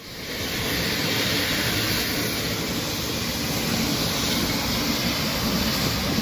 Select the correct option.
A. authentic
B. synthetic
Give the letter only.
A